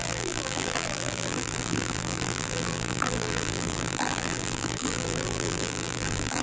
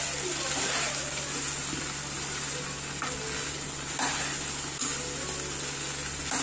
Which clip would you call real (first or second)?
second